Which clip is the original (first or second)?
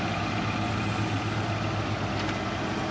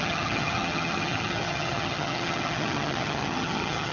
first